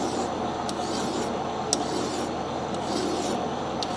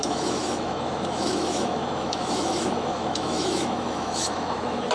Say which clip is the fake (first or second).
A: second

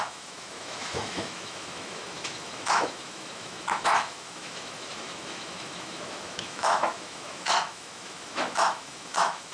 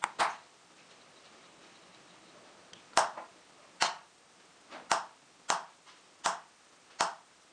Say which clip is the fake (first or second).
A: first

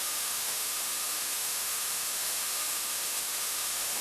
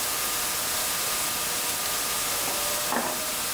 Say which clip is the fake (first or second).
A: first